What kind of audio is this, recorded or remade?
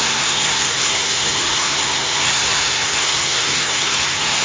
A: remade